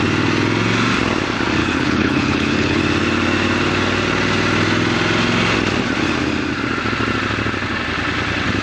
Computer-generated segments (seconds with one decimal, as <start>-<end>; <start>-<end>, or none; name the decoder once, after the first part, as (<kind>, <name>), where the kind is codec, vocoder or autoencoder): 1.6-2.8 (codec, HILCodec)